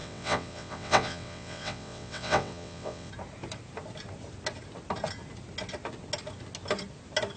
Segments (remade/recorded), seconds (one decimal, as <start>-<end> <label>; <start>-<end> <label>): 0.0-3.1 remade; 3.1-7.4 recorded